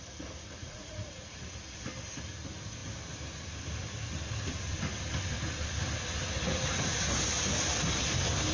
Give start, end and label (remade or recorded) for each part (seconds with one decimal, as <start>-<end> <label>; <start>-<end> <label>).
0.0-0.6 recorded; 0.6-1.4 remade; 1.4-8.5 recorded